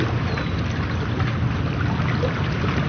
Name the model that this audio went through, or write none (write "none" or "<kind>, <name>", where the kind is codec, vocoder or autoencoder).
none